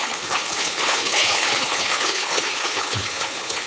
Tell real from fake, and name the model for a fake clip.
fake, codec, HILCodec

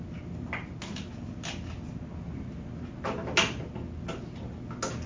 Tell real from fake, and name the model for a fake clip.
real